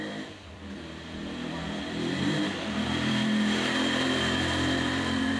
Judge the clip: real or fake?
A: fake